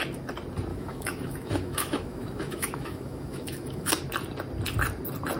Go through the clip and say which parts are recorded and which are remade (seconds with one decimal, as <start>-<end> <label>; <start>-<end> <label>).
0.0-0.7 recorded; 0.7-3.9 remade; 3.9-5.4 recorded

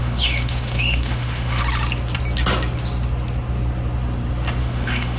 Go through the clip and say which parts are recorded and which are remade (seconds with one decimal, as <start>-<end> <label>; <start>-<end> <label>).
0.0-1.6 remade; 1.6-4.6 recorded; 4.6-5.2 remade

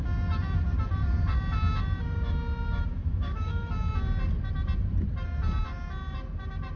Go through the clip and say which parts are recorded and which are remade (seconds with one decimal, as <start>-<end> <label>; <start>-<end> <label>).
0.0-2.9 recorded; 2.9-3.7 remade; 3.7-6.8 recorded

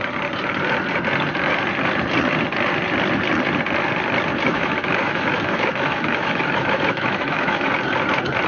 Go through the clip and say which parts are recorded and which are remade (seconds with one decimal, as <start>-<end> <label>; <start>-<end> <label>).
0.0-4.5 recorded; 4.5-7.7 remade; 7.7-8.5 recorded

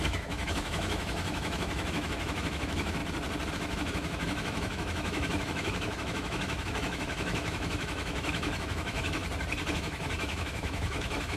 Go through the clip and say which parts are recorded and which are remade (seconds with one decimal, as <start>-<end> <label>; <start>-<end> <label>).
0.0-3.0 remade; 3.0-3.5 recorded; 3.5-9.2 remade; 9.2-9.7 recorded; 9.7-11.4 remade

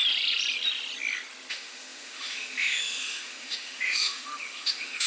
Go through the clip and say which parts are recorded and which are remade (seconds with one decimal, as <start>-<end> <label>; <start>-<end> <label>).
0.0-1.5 recorded; 1.5-5.1 remade

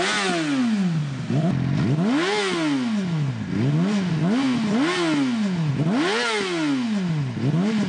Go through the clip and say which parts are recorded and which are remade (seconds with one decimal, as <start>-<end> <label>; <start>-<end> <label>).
0.0-7.9 recorded

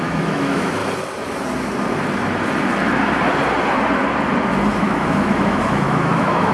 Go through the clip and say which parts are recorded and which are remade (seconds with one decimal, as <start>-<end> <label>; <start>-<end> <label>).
0.0-0.8 remade; 0.8-4.7 recorded; 4.7-6.5 remade